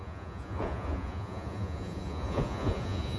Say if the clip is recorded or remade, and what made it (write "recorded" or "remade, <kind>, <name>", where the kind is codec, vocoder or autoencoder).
remade, vocoder, Vocos